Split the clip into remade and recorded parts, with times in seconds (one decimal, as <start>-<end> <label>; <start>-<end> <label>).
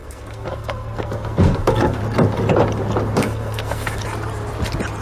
0.0-2.0 remade; 2.0-3.2 recorded; 3.2-4.0 remade; 4.0-5.0 recorded